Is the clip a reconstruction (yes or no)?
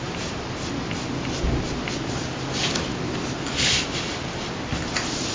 no